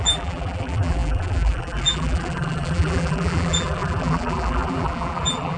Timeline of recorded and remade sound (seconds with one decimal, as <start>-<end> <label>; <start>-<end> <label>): 0.0-5.6 remade